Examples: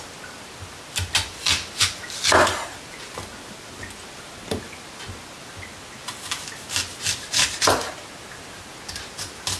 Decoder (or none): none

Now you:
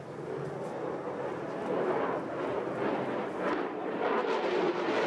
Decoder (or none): none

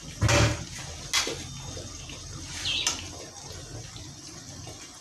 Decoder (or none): none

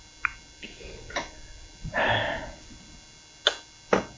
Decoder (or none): none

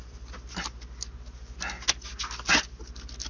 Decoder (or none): none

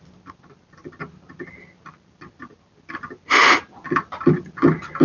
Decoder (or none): none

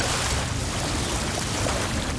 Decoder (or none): none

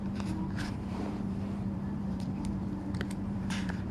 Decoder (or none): vocoder, BigVGAN v2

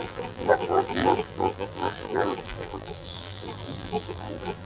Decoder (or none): vocoder, BigVGAN v2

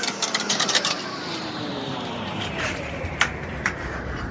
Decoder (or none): vocoder, BigVGAN v2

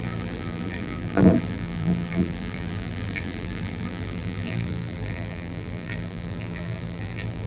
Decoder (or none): vocoder, BigVGAN v2